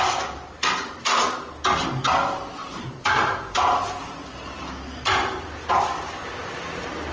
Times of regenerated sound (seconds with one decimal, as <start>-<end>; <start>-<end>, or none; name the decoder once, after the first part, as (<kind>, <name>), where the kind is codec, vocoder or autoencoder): 2.6-6.2 (vocoder, BigVGAN v2)